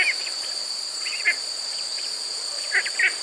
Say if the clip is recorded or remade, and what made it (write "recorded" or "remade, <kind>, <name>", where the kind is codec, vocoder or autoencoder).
recorded